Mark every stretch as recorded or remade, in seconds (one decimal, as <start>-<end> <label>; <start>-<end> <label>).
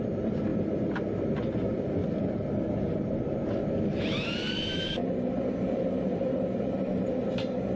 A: 0.0-2.0 remade; 2.0-4.0 recorded; 4.0-5.0 remade; 5.0-5.7 recorded; 5.7-7.8 remade